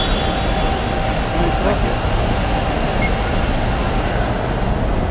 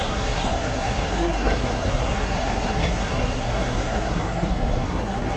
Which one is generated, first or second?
second